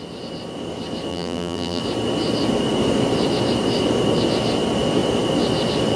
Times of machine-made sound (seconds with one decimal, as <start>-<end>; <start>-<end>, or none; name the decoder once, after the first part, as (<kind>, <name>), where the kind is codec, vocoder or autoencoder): 1.1-1.8 (vocoder, BigVGAN v2)